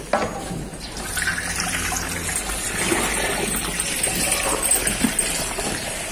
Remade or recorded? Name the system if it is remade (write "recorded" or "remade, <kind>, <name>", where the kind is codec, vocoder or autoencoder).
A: recorded